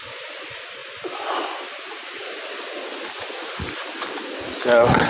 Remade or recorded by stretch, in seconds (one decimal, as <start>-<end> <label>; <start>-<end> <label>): 0.0-5.1 recorded